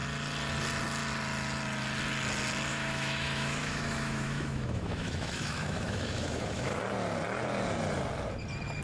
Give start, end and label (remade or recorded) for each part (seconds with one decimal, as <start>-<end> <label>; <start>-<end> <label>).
0.0-2.7 recorded; 2.7-6.8 remade; 6.8-8.8 recorded